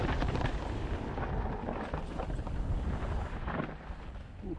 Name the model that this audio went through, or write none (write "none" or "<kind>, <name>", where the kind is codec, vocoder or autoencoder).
none